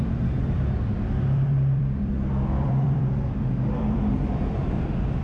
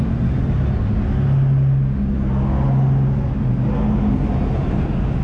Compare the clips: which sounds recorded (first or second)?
second